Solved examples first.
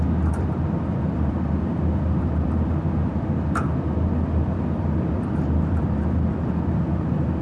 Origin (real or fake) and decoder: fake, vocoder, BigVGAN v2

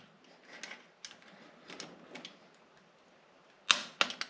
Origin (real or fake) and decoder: real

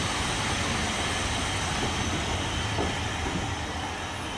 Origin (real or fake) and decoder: real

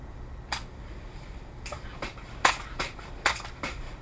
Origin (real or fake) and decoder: fake, vocoder, BigVGAN v2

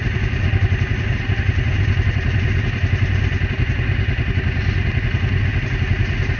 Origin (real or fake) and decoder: real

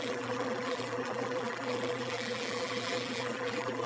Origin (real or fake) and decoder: fake, vocoder, BigVGAN v2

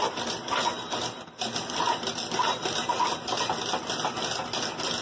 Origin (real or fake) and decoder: real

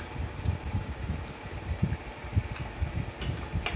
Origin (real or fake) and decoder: fake, vocoder, BigVGAN v2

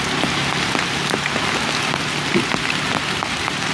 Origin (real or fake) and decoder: real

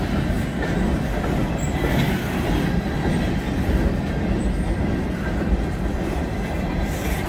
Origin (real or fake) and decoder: fake, vocoder, BigVGAN v2